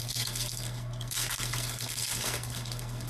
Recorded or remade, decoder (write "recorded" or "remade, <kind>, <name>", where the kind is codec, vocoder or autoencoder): remade, codec, SNAC